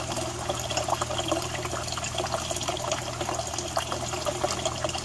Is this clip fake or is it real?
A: real